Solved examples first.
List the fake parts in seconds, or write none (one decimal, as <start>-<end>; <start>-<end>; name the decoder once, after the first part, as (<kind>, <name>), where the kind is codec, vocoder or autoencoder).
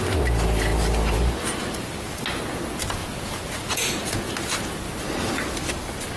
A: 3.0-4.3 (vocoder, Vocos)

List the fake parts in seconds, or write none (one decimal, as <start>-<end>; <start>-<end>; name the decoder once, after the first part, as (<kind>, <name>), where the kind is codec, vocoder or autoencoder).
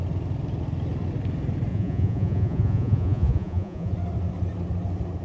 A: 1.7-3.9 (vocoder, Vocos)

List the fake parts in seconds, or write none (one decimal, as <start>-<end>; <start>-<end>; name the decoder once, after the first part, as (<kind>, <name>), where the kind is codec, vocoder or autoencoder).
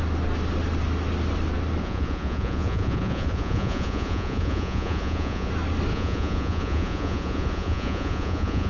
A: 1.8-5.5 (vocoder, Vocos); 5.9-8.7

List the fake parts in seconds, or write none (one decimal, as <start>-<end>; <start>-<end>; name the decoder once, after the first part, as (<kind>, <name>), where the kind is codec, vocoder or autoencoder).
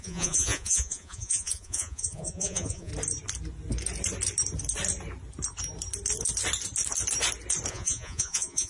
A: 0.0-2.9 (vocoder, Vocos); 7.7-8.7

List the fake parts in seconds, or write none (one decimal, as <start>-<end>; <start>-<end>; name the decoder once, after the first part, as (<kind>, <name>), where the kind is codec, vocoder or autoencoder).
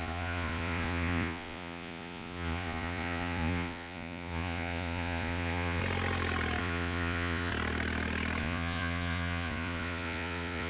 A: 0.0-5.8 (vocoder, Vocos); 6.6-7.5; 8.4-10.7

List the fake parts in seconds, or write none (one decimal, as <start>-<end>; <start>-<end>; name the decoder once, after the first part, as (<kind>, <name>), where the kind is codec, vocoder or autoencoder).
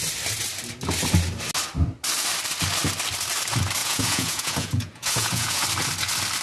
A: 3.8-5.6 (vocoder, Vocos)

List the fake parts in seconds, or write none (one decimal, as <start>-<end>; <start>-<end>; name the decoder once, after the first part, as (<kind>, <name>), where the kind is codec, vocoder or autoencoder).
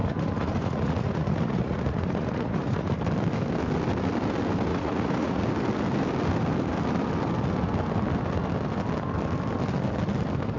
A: 0.0-3.0 (vocoder, Vocos); 4.7-5.4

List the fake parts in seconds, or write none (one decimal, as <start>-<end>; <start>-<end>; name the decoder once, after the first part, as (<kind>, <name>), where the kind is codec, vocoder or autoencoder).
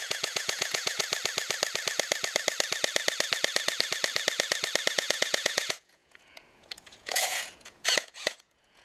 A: 0.0-1.0 (vocoder, Vocos); 4.9-8.8